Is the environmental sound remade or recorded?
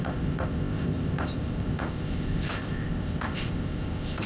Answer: remade